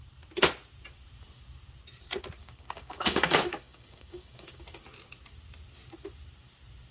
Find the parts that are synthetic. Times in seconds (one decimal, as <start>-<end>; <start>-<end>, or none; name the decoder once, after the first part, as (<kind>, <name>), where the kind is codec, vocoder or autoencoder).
2.4-4.8 (codec, DAC)